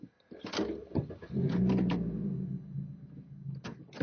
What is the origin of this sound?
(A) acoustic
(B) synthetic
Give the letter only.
A